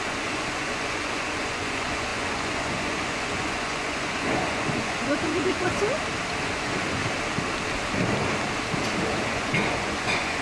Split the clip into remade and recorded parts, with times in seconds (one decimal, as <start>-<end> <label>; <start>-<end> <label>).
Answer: 0.0-5.7 remade; 5.7-6.4 recorded; 6.4-7.0 remade; 7.0-9.3 recorded; 9.3-10.4 remade